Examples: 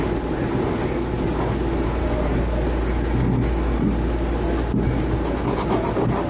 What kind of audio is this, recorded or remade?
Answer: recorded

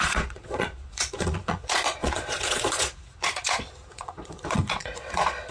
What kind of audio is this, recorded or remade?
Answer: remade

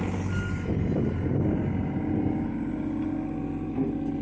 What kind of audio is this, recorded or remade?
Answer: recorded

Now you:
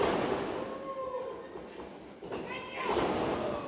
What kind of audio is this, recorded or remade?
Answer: recorded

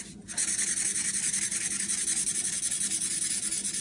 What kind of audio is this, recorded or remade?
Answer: recorded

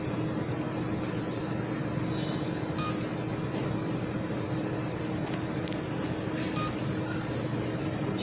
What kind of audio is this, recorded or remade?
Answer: recorded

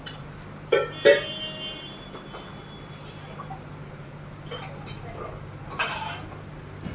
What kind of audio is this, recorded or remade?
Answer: recorded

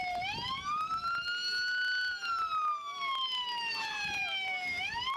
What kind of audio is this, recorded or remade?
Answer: recorded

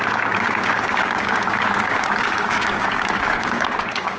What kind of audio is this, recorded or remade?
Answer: remade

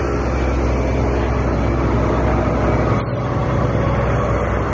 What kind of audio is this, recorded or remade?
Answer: recorded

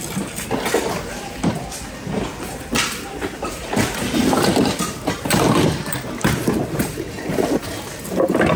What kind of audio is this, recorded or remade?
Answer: recorded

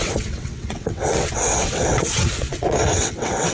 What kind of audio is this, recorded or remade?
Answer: remade